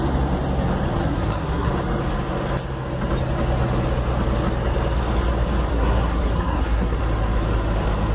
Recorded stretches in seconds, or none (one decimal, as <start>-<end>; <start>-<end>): 0.0-0.9; 1.7-5.7; 7.0-8.1